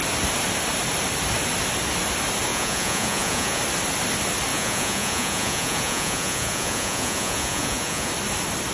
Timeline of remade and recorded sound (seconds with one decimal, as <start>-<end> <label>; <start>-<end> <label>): 0.0-2.5 recorded; 2.5-3.6 remade; 3.6-4.5 recorded; 4.5-8.1 remade; 8.1-8.7 recorded